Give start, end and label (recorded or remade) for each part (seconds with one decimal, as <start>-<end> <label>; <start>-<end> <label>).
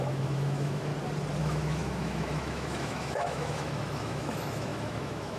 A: 0.0-0.9 remade; 0.9-1.4 recorded; 1.4-5.4 remade